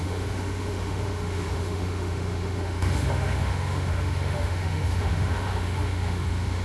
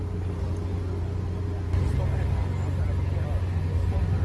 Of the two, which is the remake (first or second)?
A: first